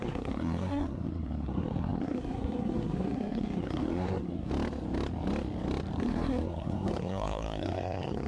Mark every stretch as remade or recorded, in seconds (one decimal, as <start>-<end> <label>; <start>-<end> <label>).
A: 0.0-4.5 remade; 4.5-6.0 recorded; 6.0-8.3 remade